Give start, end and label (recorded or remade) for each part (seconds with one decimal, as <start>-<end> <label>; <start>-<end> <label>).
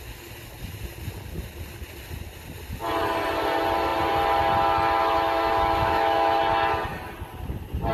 0.0-5.0 recorded; 5.0-6.4 remade; 6.4-7.9 recorded